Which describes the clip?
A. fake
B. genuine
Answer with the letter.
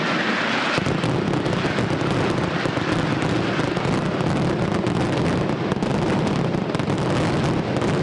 B